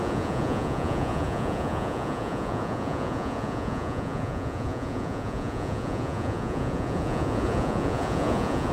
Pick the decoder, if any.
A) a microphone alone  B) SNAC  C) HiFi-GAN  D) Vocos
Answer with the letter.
D